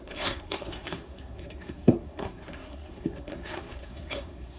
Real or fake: fake